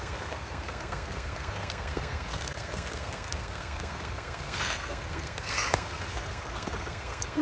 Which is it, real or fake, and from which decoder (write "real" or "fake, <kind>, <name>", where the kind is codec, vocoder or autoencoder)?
fake, codec, SNAC